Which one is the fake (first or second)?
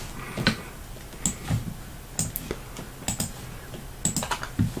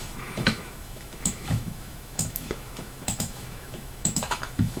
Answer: second